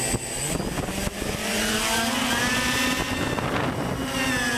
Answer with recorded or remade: recorded